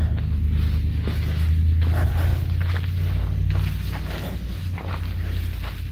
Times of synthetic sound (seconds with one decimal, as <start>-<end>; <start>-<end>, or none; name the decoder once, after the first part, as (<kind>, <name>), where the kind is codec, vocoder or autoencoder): none